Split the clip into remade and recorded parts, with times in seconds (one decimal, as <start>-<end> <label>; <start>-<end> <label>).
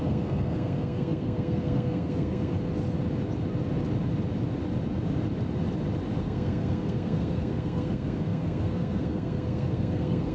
0.0-2.5 remade; 2.5-6.2 recorded; 6.2-10.3 remade